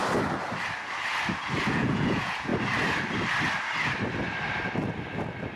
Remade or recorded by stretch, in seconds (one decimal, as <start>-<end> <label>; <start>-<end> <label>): 0.0-1.6 recorded; 1.6-2.5 remade; 2.5-5.6 recorded